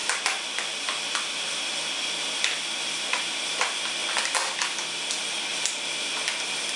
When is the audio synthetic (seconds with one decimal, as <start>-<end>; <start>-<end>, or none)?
none